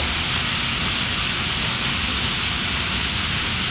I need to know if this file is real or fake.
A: real